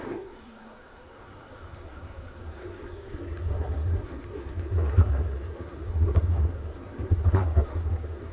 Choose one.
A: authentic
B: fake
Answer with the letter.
B